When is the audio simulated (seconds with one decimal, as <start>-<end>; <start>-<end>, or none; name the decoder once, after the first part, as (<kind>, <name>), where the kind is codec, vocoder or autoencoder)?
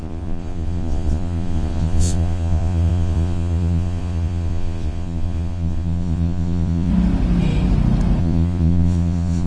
0.0-6.9 (vocoder, Vocos); 8.2-9.5